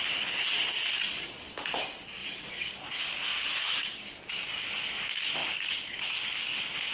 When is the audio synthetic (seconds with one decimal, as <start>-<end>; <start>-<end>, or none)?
2.2-2.9; 3.3-4.2; 5.4-6.0